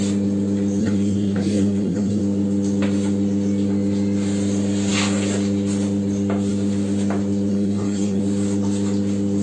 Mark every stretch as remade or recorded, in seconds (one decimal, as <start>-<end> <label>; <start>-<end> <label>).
0.0-0.8 recorded; 0.8-2.2 remade; 2.2-7.5 recorded; 7.5-8.2 remade; 8.2-9.4 recorded